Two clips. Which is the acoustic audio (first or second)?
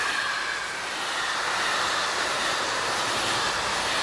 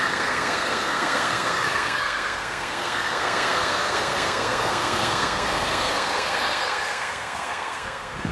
first